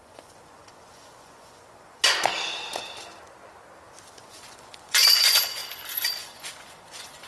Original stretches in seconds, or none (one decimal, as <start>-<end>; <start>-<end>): 2.0-4.2; 5.6-6.2

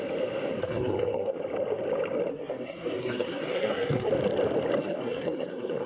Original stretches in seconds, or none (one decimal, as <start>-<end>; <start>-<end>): 0.0-0.6; 1.4-2.3; 4.1-4.8

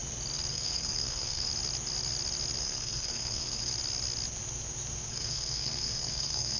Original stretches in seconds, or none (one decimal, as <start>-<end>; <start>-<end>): 0.0-0.5; 1.5-2.6; 3.7-5.1